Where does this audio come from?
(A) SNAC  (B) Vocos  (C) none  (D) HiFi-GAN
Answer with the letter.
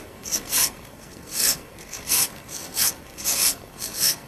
A